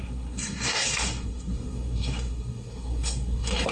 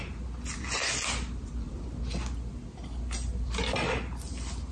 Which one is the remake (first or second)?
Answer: first